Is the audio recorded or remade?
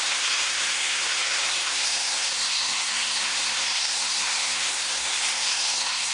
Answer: remade